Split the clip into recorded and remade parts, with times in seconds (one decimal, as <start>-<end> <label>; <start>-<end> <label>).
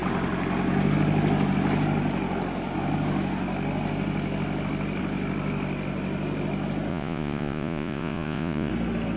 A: 0.0-6.9 recorded; 6.9-8.7 remade; 8.7-9.2 recorded